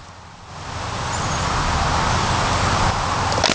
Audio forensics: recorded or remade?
recorded